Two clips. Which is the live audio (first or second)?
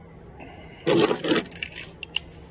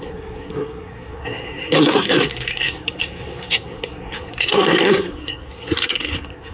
first